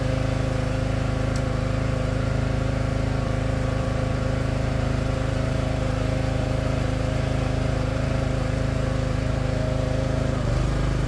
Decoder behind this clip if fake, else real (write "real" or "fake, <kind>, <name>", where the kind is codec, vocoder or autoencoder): fake, vocoder, BigVGAN v2